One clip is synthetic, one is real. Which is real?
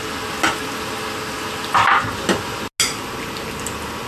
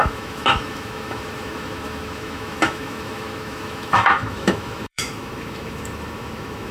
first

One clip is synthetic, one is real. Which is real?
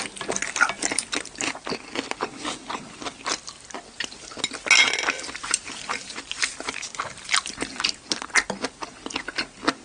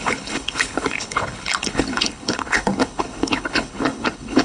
first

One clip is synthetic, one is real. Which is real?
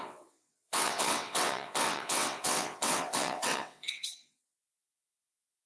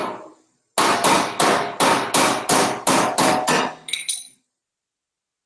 second